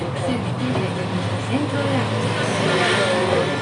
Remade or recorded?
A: recorded